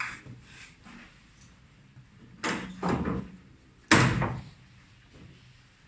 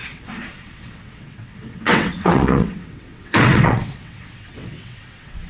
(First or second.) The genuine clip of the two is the first